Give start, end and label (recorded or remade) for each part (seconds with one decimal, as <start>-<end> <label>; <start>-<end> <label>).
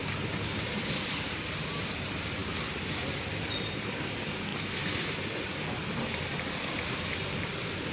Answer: 0.0-7.9 recorded